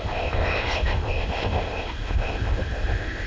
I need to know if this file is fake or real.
fake